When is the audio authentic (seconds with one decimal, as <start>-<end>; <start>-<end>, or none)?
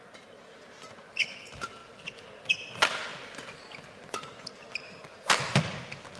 0.0-6.2